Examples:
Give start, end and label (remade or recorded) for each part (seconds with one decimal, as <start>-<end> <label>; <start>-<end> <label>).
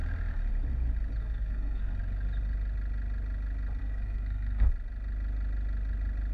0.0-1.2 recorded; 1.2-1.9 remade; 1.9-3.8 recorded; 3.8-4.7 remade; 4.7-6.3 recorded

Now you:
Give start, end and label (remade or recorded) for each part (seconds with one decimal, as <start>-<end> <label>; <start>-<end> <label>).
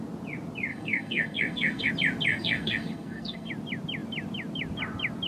0.0-0.7 recorded; 0.7-1.9 remade; 1.9-2.3 recorded; 2.3-3.5 remade; 3.5-5.3 recorded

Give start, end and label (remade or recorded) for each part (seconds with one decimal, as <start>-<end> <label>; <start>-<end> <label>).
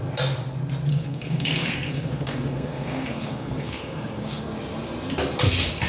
0.0-0.9 recorded; 0.9-4.4 remade; 4.4-5.9 recorded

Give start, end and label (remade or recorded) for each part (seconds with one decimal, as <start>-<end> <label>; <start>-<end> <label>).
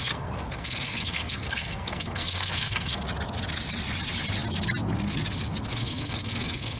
0.0-3.0 remade; 3.0-5.8 recorded; 5.8-6.8 remade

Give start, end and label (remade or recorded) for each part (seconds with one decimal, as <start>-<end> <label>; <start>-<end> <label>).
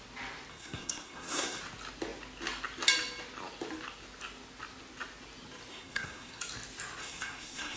0.0-0.5 recorded; 0.5-1.6 remade; 1.6-5.7 recorded; 5.7-6.4 remade; 6.4-7.0 recorded; 7.0-7.8 remade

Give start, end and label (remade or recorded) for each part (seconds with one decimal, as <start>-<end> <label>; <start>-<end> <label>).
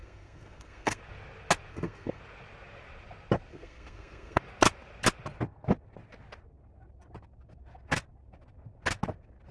0.0-1.0 remade; 1.0-1.7 recorded; 1.7-2.2 remade; 2.2-3.5 recorded; 3.5-4.4 remade; 4.4-9.5 recorded